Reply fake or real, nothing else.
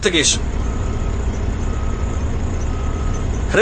fake